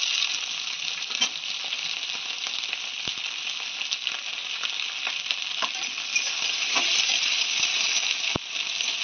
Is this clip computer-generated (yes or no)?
no